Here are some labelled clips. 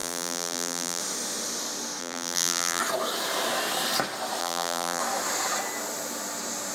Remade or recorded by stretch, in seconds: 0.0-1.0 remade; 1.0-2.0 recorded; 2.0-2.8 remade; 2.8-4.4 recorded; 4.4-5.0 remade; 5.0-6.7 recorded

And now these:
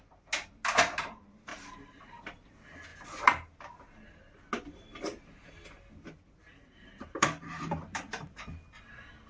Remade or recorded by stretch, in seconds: 0.0-1.5 recorded; 1.5-2.2 remade; 2.2-6.5 recorded; 6.5-8.0 remade; 8.0-9.3 recorded

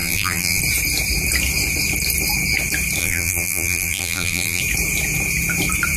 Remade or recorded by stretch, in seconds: 0.0-0.6 remade; 0.6-3.0 recorded; 3.0-4.6 remade; 4.6-6.0 recorded

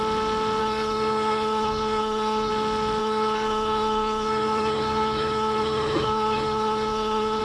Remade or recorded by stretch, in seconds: 0.0-0.6 recorded; 0.6-2.5 remade; 2.5-3.0 recorded; 3.0-7.4 remade